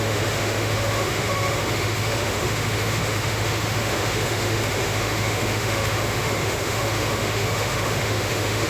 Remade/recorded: remade